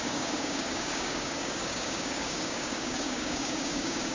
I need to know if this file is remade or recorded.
remade